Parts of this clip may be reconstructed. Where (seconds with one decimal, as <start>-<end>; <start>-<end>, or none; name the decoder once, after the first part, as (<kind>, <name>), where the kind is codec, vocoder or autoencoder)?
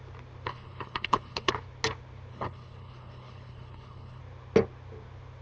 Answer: 0.5-1.5 (codec, HILCodec); 2.3-4.2